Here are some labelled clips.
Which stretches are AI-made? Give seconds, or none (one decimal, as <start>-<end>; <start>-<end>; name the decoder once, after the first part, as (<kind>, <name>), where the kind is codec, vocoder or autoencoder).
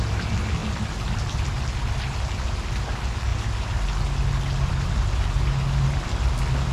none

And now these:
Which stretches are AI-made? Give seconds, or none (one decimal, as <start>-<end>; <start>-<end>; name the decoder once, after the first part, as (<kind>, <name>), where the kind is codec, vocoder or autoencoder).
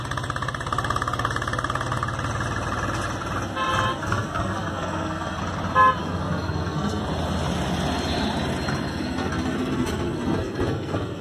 3.9-5.4 (codec, SNAC); 6.0-7.0; 8.9-11.2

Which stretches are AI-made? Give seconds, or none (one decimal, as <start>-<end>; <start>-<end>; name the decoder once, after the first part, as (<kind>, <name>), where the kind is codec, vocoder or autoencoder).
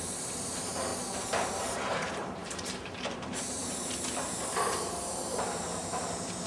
0.0-0.9 (vocoder, BigVGAN v2); 1.6-6.5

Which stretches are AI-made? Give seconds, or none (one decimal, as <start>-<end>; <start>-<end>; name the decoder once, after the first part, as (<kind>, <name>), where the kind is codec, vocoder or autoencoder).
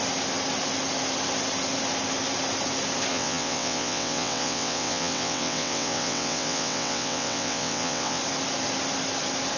3.1-8.2 (vocoder, WaveNeXt)